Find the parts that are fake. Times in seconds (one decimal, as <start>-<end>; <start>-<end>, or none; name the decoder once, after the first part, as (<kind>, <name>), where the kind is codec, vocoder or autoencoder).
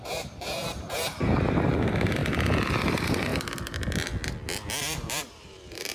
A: 0.0-2.2 (vocoder, BigVGAN v2); 2.7-3.3; 4.8-5.9